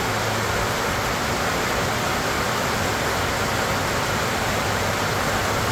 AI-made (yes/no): no